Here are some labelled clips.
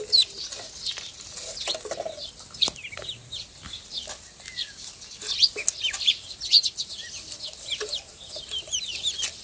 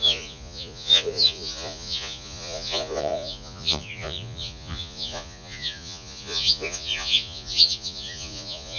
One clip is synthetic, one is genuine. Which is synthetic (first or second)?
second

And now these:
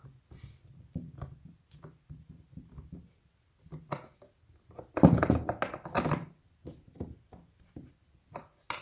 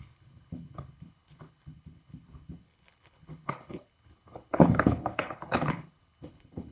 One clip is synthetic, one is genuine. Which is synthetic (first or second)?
second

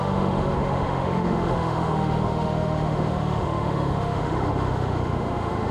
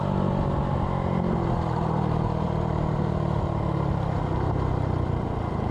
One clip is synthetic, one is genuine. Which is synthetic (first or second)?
first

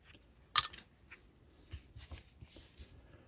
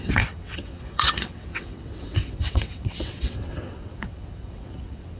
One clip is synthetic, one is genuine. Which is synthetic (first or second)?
second